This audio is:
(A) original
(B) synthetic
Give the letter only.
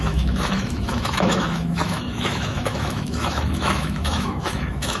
B